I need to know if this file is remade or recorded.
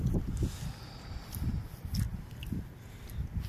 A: recorded